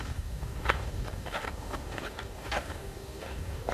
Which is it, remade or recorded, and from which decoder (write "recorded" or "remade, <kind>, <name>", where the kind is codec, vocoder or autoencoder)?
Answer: remade, codec, DAC